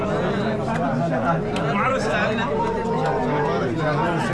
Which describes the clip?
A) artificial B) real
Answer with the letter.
B